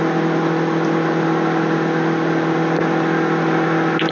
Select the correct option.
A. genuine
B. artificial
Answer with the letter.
A